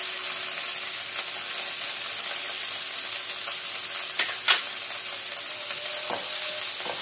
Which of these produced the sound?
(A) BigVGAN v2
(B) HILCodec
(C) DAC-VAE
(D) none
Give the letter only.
D